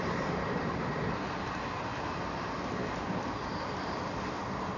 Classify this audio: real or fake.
real